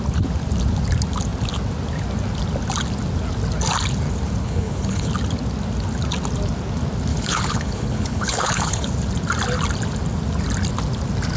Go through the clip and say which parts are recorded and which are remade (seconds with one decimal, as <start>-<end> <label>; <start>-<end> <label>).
0.0-4.4 recorded; 4.4-5.1 remade; 5.1-7.1 recorded; 7.1-8.9 remade; 8.9-11.4 recorded

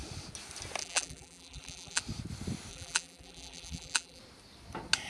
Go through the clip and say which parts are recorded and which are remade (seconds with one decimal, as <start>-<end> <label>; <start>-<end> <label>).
0.0-0.8 recorded; 0.8-2.0 remade; 2.0-2.7 recorded; 2.7-4.2 remade; 4.2-5.1 recorded